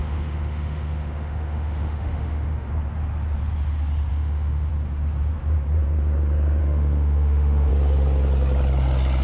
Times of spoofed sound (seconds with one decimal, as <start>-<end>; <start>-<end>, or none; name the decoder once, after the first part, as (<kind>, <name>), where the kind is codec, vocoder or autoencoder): 0.0-2.7 (autoencoder, DAC-VAE); 4.1-4.7; 6.6-7.7